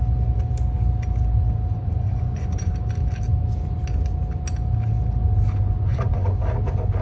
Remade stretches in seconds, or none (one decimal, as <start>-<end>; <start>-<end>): 1.8-2.7; 5.9-6.4

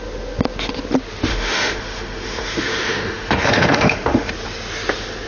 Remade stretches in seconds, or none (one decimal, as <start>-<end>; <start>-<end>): 1.3-4.3

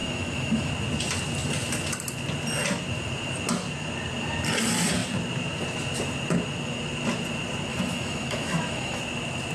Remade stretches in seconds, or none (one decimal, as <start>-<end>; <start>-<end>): 0.0-0.7; 7.7-9.0

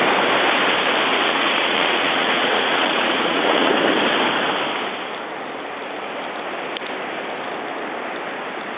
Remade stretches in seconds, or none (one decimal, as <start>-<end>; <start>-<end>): 1.1-3.7

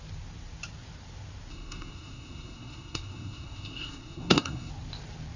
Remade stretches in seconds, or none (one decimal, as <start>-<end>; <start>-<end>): 1.5-4.7

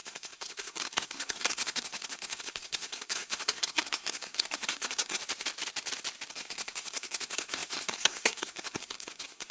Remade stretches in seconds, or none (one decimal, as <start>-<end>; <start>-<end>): 0.0-5.2; 6.3-9.5

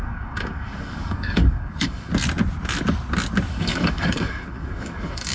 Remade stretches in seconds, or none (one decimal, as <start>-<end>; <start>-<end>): 0.0-2.1; 3.5-5.3